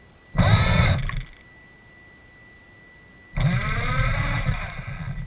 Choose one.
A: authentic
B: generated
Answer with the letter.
A